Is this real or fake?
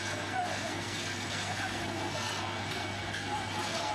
fake